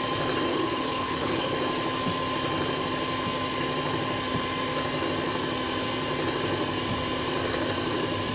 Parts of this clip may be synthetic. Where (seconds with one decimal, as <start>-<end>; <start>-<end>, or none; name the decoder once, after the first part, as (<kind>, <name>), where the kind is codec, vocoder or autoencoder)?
0.5-1.5 (codec, HILCodec)